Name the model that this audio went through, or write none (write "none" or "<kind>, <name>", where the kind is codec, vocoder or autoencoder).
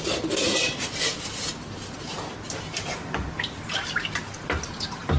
none